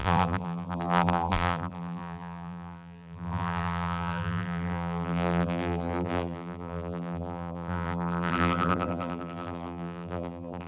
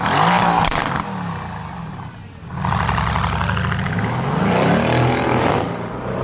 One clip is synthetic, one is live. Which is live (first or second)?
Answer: second